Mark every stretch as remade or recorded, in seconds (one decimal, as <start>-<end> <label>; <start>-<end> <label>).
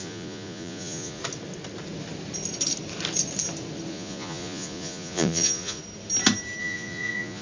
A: 0.0-1.2 remade; 1.2-3.9 recorded; 3.9-5.8 remade; 5.8-6.6 recorded; 6.6-7.4 remade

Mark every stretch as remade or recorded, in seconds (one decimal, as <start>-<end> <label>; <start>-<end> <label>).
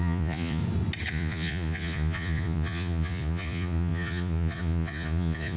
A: 0.0-0.6 remade; 0.6-1.1 recorded; 1.1-5.6 remade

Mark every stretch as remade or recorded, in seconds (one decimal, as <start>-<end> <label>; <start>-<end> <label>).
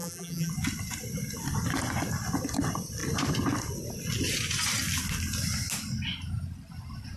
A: 0.0-0.5 remade; 0.5-7.2 recorded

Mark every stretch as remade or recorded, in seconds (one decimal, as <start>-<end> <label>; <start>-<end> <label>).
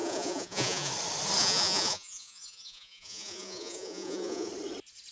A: 0.0-0.9 remade; 0.9-1.4 recorded; 1.4-4.5 remade; 4.5-5.1 recorded